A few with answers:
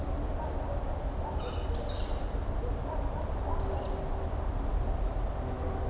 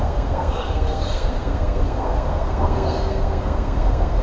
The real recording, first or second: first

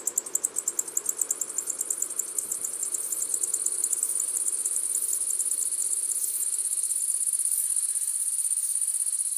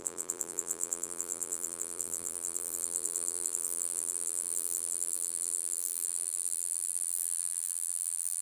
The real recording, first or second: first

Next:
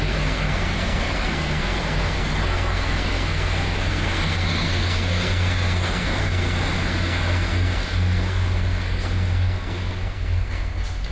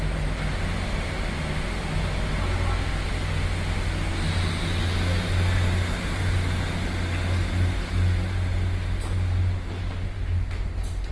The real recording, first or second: second